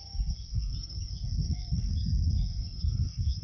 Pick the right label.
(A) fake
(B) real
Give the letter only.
A